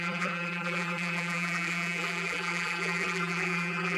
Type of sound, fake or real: fake